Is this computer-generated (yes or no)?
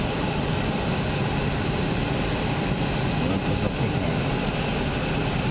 no